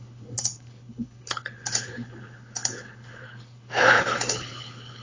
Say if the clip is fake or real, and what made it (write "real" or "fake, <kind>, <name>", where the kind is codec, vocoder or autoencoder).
fake, codec, HILCodec